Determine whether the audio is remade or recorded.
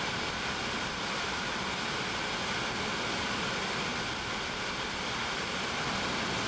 recorded